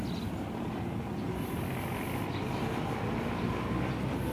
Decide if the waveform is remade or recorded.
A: recorded